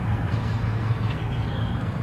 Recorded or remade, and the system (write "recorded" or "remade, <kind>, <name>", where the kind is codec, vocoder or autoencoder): remade, codec, SNAC